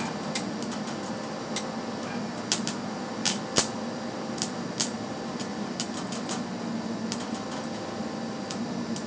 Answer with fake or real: real